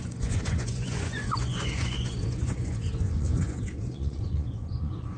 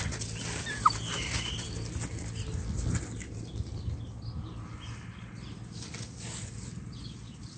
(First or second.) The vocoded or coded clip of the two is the first